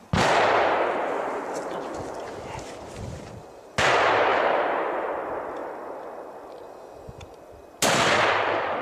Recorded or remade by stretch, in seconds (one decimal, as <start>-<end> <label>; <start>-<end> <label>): 0.0-4.3 recorded; 4.3-5.1 remade; 5.1-8.8 recorded